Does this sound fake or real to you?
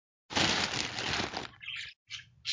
real